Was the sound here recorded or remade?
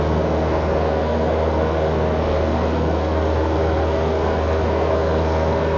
remade